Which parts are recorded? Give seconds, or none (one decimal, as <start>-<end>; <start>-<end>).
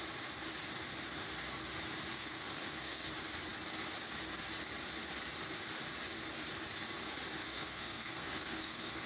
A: 0.0-2.1; 3.1-7.4